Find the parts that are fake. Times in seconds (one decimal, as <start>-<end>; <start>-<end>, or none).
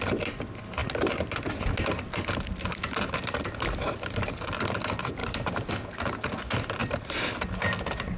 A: 5.2-5.7; 6.8-7.4